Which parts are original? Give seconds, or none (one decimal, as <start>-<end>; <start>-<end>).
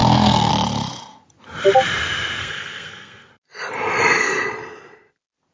0.5-2.4; 3.3-5.5